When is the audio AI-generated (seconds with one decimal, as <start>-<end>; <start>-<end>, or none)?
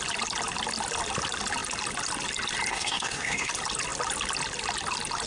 2.7-3.5